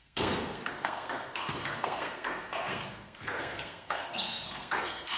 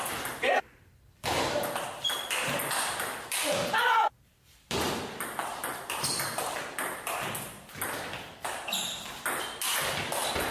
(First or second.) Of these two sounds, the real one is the second